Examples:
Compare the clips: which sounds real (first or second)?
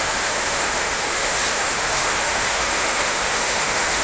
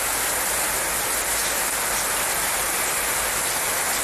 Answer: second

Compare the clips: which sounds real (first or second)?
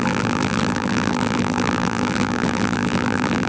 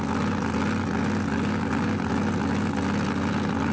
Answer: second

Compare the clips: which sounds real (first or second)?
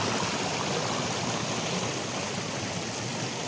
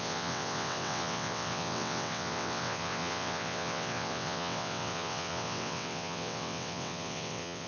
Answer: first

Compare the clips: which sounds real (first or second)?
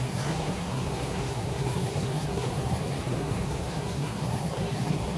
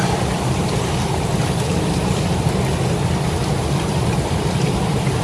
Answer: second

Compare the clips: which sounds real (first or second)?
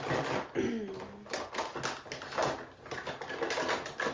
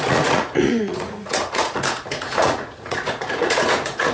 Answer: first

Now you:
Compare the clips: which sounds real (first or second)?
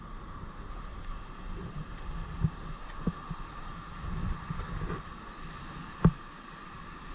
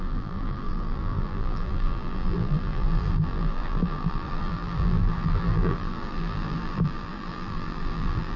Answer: first